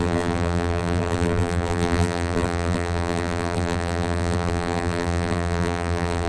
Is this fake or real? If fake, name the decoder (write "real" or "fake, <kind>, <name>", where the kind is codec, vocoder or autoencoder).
fake, vocoder, BigVGAN v2